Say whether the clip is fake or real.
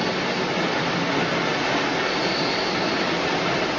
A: real